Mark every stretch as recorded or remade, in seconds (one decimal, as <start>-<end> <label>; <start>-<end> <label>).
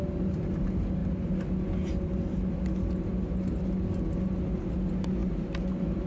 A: 0.0-6.1 recorded